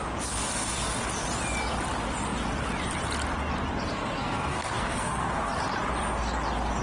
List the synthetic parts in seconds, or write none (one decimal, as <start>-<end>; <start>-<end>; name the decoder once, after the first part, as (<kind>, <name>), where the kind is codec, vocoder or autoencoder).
3.9-5.3 (codec, SNAC)